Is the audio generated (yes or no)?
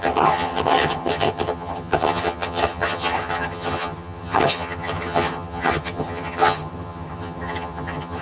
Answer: yes